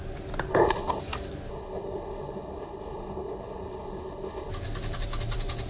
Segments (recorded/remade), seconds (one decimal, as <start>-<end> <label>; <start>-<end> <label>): 0.0-0.5 recorded; 0.5-1.0 remade; 1.0-1.5 recorded; 1.5-4.5 remade; 4.5-5.7 recorded